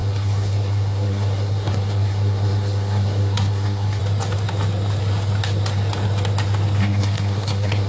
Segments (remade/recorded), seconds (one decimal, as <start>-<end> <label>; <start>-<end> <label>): 0.0-4.0 remade; 4.0-6.8 recorded; 6.8-7.9 remade